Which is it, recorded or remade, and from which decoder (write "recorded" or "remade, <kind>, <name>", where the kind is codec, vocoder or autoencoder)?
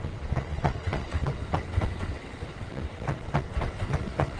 remade, vocoder, WaveNeXt